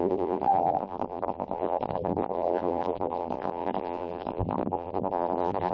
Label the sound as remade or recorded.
remade